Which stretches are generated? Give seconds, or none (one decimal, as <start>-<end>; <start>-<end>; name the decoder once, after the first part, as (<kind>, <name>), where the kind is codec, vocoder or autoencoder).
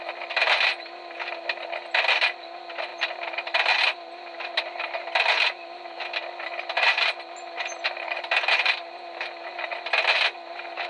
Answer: none